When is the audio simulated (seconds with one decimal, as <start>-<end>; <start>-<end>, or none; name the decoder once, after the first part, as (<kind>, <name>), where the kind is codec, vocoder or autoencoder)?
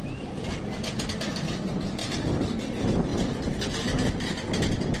none